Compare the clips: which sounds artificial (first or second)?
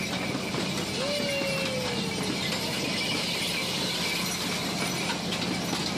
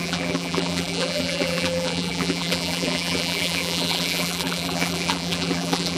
second